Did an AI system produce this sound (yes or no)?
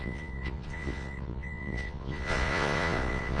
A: yes